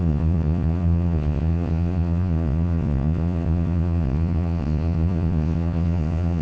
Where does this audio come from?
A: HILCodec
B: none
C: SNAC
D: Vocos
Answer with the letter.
D